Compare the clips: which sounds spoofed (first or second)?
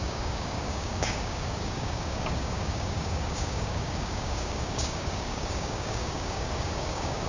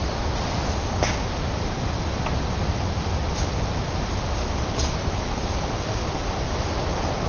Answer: first